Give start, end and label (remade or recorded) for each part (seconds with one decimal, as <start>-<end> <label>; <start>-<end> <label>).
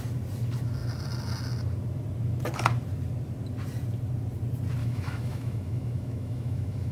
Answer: 0.0-4.8 recorded; 4.8-6.9 remade